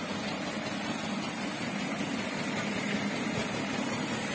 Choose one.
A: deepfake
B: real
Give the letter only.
B